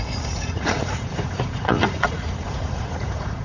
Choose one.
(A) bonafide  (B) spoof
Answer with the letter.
B